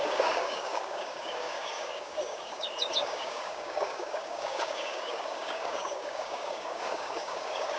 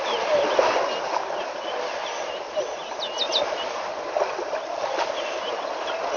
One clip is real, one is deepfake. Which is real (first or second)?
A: second